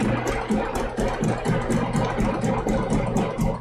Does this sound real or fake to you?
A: real